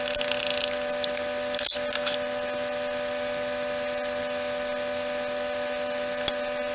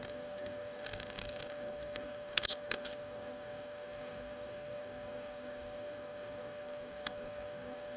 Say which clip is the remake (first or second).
second